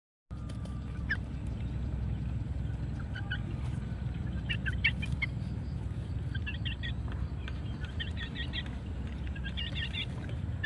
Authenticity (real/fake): real